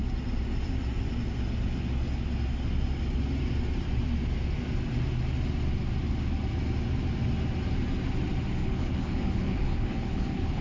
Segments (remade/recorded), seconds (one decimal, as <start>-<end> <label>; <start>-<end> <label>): 0.0-8.6 recorded; 8.6-10.6 remade